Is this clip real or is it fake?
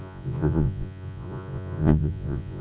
fake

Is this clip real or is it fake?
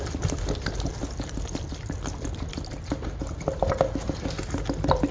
real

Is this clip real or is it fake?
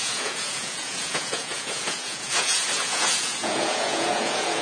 fake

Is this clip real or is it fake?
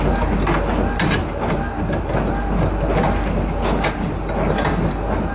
real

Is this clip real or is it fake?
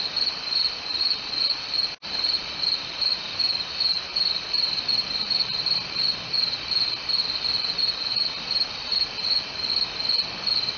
real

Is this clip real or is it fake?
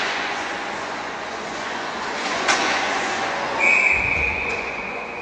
fake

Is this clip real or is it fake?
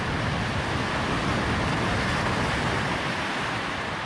real